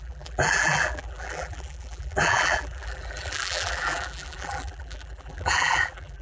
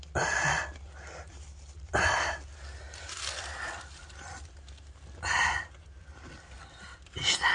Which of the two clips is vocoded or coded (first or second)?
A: first